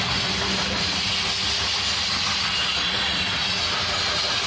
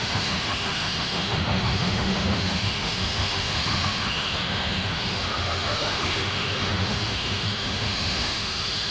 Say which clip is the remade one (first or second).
second